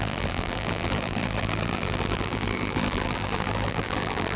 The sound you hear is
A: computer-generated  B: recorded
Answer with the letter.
A